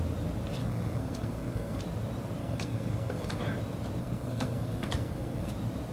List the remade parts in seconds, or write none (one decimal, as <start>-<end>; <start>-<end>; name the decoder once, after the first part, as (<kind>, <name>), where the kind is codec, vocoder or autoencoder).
0.6-1.8 (codec, SNAC); 2.4-3.4; 4.0-5.5